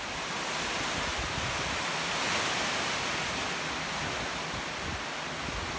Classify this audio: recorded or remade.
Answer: recorded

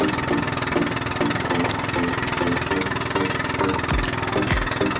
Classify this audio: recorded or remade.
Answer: recorded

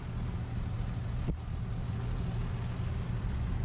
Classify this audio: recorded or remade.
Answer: recorded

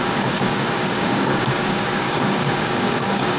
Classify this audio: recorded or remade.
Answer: remade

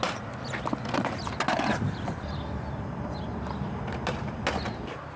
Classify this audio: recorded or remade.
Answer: recorded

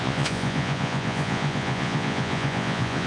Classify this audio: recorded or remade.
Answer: remade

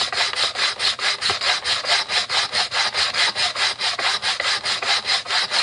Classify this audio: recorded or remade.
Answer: recorded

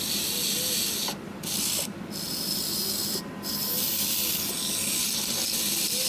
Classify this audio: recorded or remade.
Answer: recorded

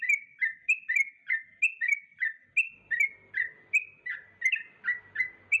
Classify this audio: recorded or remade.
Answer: recorded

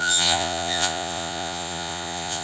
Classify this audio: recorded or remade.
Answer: remade